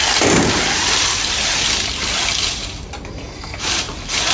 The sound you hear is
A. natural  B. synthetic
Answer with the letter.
A